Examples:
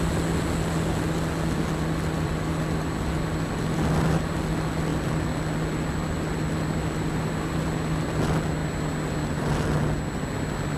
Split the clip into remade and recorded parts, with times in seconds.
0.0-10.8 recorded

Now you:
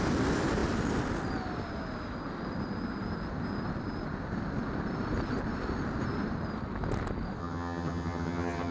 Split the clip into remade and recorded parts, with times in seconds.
0.0-7.4 recorded; 7.4-8.7 remade

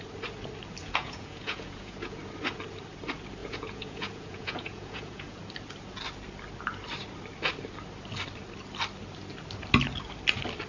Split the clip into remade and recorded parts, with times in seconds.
0.0-0.8 recorded; 0.8-2.2 remade; 2.2-3.4 recorded; 3.4-5.4 remade; 5.4-10.7 recorded

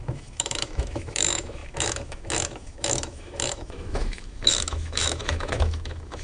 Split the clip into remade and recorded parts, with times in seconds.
0.0-6.2 remade